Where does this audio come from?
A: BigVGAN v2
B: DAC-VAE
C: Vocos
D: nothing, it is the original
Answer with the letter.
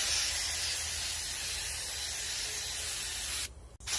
D